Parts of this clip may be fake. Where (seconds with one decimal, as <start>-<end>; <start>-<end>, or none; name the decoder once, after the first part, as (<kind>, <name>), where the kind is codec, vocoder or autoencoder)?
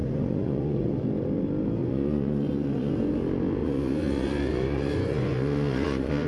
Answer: 0.0-1.0 (vocoder, Vocos); 1.8-2.9; 3.6-6.3